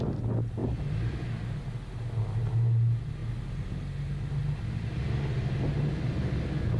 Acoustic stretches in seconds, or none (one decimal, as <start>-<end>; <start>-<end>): 0.0-6.8